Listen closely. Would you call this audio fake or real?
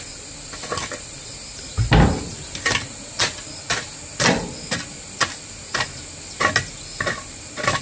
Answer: real